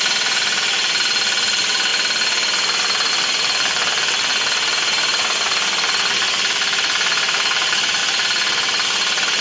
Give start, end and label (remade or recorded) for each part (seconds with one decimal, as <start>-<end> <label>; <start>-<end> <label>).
0.0-1.9 remade; 1.9-3.1 recorded; 3.1-4.3 remade; 4.3-4.8 recorded; 4.8-8.0 remade; 8.0-9.4 recorded